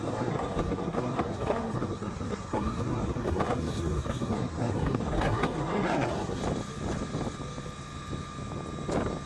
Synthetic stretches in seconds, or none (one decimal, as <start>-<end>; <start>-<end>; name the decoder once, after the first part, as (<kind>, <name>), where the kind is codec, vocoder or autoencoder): 0.0-6.4 (codec, SNAC)